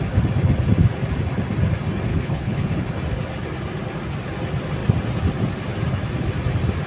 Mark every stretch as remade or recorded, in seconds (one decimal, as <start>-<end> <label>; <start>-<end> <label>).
0.0-2.1 recorded; 2.1-2.8 remade; 2.8-6.9 recorded